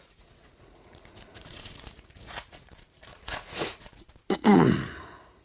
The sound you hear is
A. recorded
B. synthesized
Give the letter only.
B